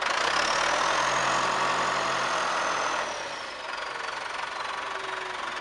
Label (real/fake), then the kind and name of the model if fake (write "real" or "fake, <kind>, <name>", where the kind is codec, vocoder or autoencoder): real